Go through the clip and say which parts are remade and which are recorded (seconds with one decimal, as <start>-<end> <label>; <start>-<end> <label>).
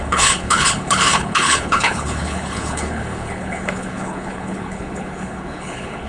0.0-6.1 remade